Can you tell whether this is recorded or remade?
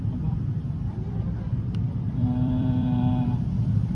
remade